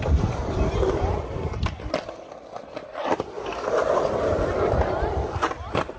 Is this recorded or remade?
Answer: recorded